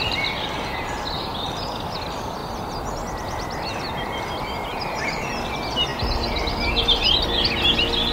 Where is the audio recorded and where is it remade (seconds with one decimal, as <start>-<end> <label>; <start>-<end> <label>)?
0.0-8.1 recorded